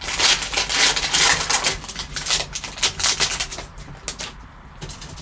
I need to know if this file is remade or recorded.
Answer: recorded